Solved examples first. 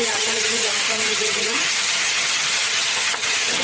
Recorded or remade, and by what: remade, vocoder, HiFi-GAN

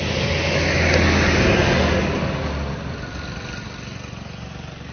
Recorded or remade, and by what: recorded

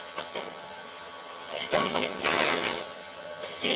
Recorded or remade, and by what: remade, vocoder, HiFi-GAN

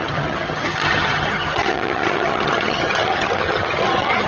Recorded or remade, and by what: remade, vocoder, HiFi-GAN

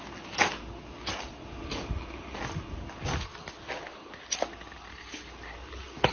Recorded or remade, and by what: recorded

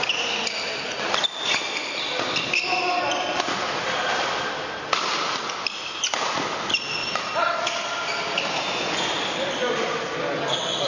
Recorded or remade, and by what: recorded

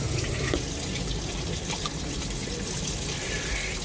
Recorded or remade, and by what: recorded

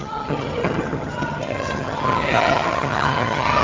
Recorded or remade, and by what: remade, vocoder, HiFi-GAN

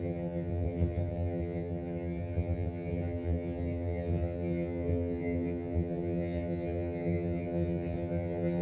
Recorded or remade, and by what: remade, vocoder, HiFi-GAN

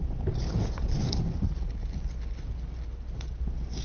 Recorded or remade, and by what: recorded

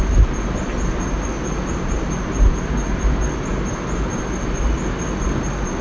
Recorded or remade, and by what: recorded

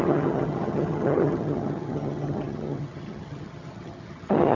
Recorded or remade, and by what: remade, vocoder, HiFi-GAN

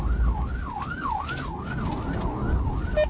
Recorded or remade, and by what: recorded